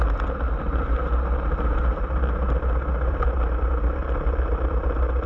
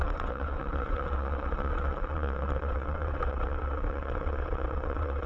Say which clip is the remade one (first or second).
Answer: second